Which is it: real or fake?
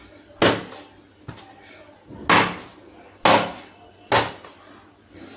real